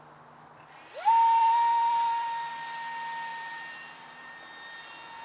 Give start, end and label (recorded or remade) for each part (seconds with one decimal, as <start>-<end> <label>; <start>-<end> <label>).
0.0-1.4 recorded; 1.4-2.5 remade; 2.5-3.3 recorded; 3.3-4.8 remade; 4.8-5.2 recorded